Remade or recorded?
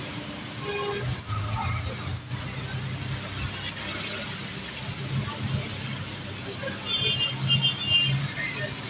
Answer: recorded